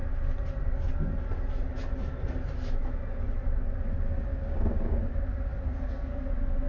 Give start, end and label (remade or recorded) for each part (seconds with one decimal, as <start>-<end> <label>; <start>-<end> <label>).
0.0-4.3 recorded; 4.3-5.0 remade; 5.0-6.7 recorded